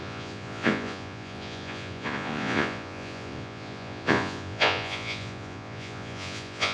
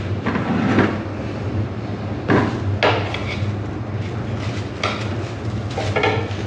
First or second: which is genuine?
second